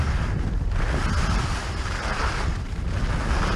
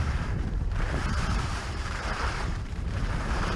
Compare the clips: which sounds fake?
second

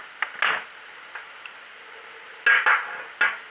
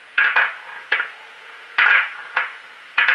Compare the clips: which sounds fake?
second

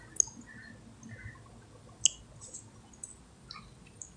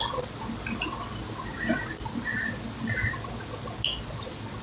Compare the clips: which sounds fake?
second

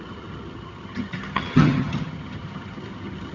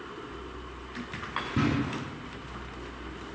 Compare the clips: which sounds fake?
first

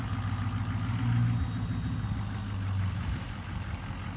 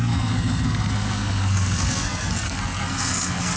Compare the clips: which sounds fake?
second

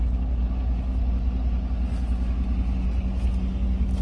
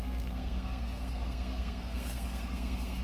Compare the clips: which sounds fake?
second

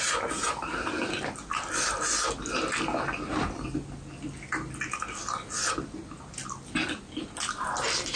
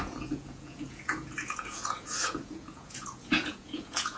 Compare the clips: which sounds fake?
second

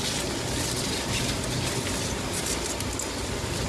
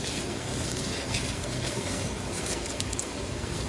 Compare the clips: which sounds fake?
second